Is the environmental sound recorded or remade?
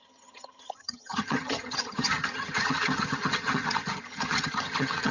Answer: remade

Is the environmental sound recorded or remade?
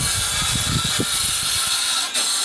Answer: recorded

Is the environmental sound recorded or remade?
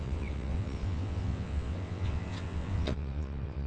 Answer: remade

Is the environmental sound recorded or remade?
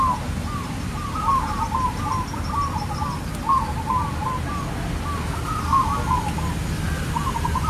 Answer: recorded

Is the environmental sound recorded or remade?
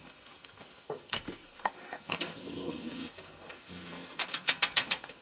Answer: remade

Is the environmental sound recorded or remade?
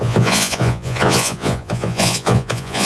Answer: remade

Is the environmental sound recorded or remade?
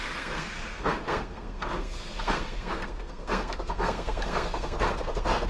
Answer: remade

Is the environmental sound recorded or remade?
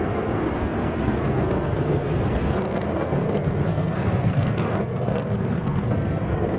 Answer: remade